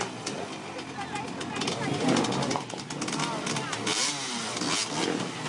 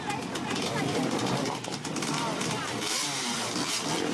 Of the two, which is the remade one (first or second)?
second